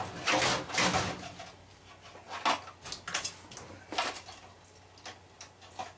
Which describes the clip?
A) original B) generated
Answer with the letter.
A